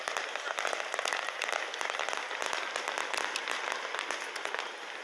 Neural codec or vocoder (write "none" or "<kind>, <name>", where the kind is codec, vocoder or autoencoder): none